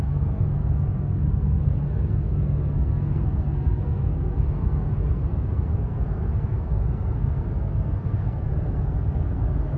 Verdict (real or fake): fake